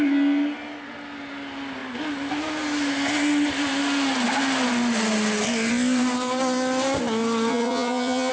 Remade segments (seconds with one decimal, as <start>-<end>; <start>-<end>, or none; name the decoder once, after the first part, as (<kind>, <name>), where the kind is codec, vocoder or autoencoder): 7.5-8.3 (vocoder, HiFi-GAN)